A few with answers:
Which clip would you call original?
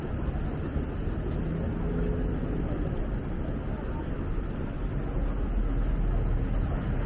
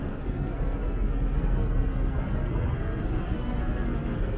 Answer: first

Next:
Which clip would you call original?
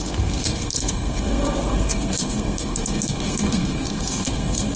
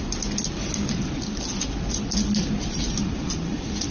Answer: second